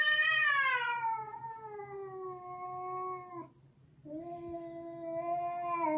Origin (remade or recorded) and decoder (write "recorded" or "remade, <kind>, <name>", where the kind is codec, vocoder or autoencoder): recorded